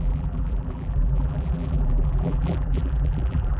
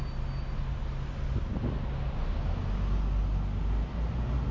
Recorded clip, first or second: second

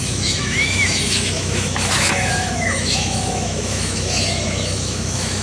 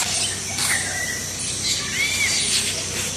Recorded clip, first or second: second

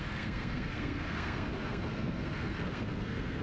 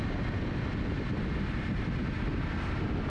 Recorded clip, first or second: second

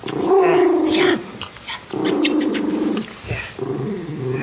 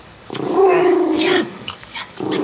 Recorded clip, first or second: first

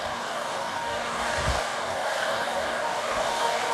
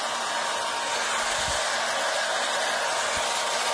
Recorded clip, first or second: second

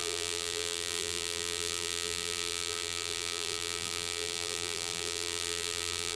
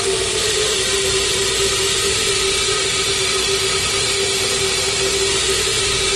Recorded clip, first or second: second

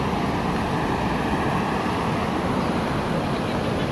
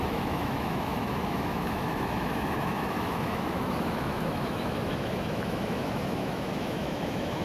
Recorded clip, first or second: first